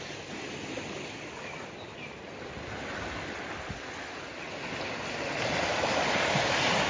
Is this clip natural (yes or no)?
yes